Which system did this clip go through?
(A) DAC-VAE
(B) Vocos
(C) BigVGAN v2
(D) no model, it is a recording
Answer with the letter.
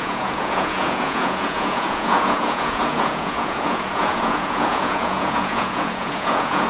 B